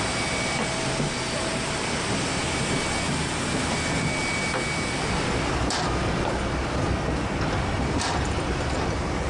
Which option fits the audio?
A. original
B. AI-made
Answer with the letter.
A